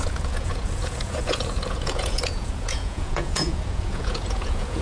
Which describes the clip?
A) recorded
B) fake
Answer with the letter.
B